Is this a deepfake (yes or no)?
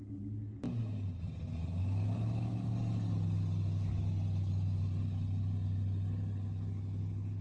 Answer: no